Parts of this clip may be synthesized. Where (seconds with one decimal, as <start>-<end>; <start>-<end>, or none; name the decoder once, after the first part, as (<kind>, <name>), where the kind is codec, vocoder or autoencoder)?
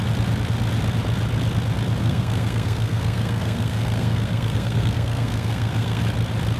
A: 2.0-6.0 (codec, SNAC)